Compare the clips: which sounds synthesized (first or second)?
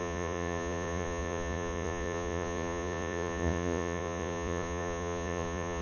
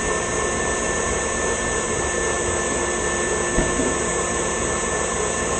first